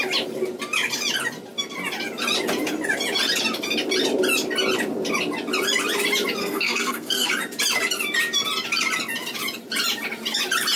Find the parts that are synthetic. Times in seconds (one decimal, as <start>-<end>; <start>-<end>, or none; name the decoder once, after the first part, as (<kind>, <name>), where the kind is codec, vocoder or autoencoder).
6.4-7.3 (codec, SNAC)